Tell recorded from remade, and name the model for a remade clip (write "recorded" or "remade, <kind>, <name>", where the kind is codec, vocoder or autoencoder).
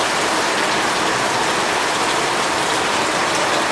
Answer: recorded